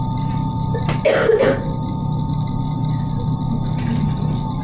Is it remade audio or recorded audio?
recorded